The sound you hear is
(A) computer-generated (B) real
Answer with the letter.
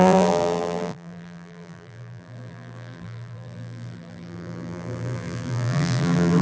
A